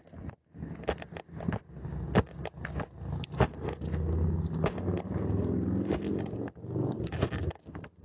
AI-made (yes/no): no